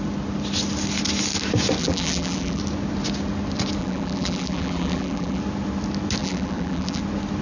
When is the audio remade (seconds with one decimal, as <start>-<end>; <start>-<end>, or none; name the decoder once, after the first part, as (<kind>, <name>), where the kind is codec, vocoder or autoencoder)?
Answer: 1.8-2.6 (vocoder, BigVGAN v2); 3.8-5.4; 6.2-7.0